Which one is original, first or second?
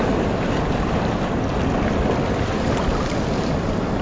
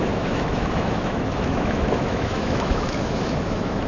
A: first